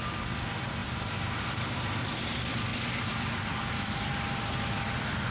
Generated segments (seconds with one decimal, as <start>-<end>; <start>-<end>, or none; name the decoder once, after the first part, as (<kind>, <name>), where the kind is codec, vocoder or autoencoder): 0.0-2.7 (vocoder, BigVGAN v2); 3.7-5.3